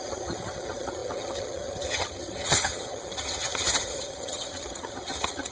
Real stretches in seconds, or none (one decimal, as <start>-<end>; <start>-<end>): none